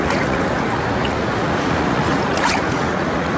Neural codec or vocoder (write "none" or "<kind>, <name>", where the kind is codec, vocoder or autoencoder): vocoder, Vocos